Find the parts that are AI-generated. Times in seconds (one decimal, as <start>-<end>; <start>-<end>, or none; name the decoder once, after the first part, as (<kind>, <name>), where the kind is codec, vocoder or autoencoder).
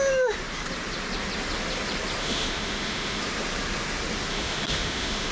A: 2.2-3.2 (autoencoder, DAC-VAE); 4.3-5.3